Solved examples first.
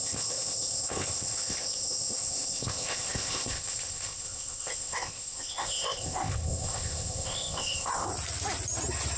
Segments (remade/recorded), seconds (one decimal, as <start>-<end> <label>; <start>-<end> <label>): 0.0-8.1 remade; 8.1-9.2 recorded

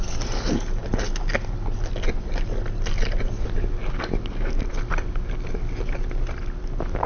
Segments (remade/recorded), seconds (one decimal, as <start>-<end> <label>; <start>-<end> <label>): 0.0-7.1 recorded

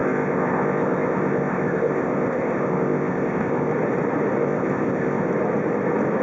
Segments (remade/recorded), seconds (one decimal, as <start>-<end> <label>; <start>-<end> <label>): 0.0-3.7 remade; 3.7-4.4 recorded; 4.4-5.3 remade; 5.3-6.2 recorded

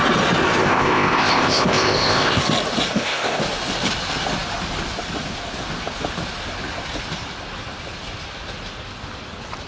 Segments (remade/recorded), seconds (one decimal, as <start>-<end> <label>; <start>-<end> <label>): 0.0-0.6 recorded; 0.6-2.4 remade; 2.4-2.9 recorded; 2.9-3.4 remade; 3.4-9.7 recorded

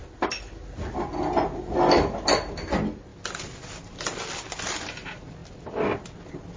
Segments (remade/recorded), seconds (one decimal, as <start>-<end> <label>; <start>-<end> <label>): 0.0-6.6 recorded

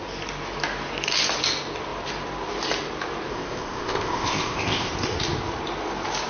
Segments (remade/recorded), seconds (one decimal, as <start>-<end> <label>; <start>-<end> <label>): 0.0-3.3 recorded; 3.3-4.9 remade; 4.9-6.3 recorded

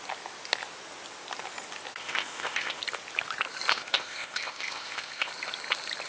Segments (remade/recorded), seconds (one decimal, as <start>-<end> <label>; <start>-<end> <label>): 0.0-2.0 recorded; 2.0-2.8 remade; 2.8-3.7 recorded; 3.7-5.3 remade; 5.3-6.1 recorded

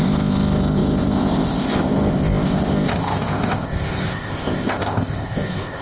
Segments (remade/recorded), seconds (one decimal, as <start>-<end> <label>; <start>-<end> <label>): 0.0-5.8 remade